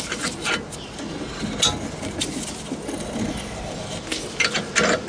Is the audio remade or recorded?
recorded